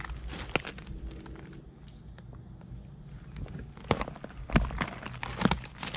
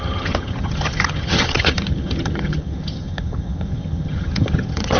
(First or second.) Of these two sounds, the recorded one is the first